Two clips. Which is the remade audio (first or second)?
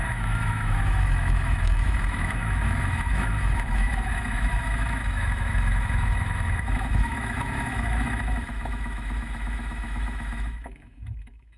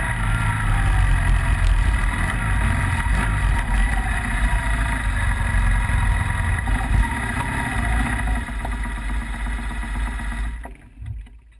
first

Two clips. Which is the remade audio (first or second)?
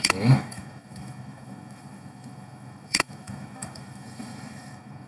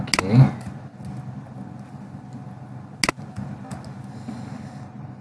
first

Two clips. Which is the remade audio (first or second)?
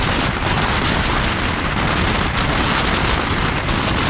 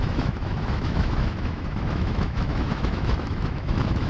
second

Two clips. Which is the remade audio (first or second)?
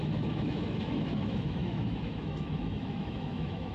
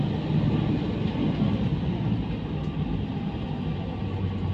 first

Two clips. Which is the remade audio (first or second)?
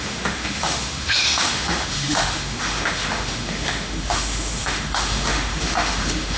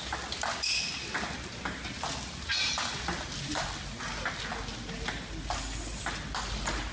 first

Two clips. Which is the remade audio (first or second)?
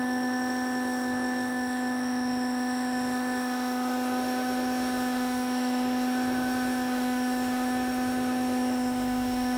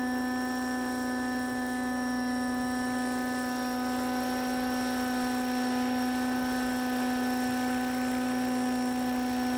first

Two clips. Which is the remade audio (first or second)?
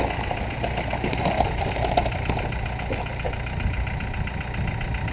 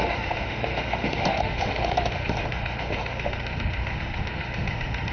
second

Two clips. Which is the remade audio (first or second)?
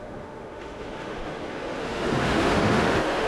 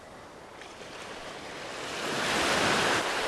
first